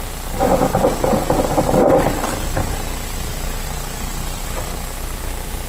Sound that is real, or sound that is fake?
real